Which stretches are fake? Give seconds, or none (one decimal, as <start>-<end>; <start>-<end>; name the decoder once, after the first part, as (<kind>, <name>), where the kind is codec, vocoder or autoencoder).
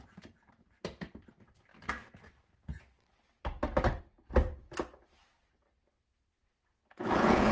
6.7-7.5 (vocoder, Vocos)